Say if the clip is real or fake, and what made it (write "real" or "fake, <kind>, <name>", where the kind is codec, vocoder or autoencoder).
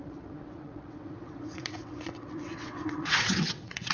fake, vocoder, WaveNeXt